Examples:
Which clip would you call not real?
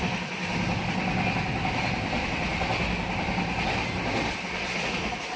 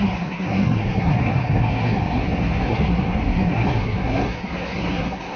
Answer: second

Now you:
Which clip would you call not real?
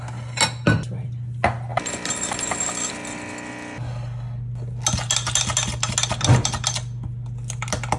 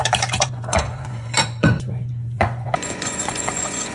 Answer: second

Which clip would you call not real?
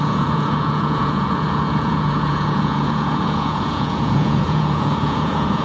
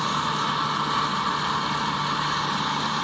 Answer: first